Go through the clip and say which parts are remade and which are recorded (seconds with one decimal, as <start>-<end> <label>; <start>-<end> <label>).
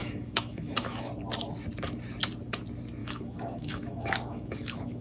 0.0-1.1 remade; 1.1-3.0 recorded; 3.0-5.0 remade